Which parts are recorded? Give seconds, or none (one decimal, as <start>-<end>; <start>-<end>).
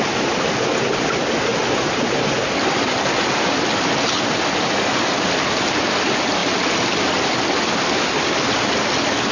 0.0-9.3